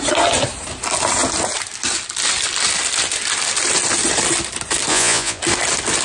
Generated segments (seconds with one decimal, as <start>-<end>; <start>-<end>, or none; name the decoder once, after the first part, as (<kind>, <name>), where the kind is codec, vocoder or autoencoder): 4.9-5.4 (vocoder, Vocos)